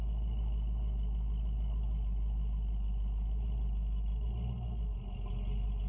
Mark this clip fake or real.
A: real